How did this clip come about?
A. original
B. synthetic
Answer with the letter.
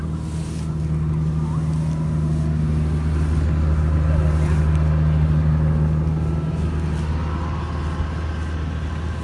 A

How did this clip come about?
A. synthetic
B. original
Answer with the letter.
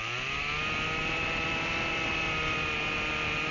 B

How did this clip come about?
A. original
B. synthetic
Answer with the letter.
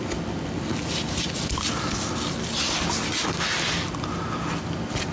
A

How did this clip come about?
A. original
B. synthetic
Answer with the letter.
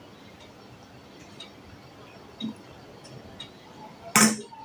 A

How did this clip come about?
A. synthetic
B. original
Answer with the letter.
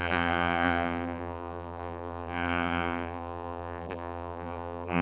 A